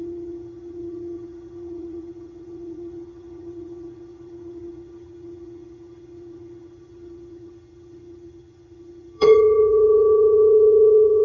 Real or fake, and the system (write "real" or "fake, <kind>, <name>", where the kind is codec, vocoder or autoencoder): fake, vocoder, HiFi-GAN